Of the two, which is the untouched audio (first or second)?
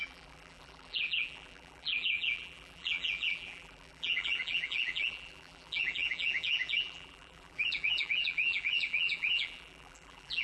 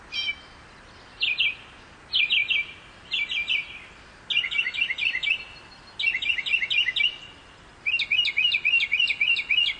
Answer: second